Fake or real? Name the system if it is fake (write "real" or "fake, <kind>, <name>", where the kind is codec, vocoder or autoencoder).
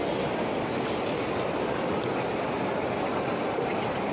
real